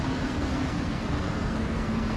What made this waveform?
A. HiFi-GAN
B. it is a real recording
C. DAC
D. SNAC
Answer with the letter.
D